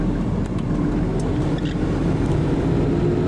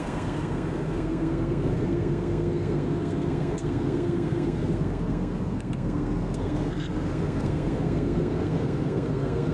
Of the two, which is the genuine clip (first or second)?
first